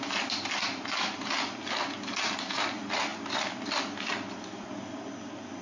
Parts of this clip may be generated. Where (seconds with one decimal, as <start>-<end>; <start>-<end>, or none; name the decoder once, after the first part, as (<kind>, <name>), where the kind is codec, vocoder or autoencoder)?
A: none